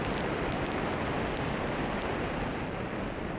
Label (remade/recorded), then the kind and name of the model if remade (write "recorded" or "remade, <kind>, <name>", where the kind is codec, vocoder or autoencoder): recorded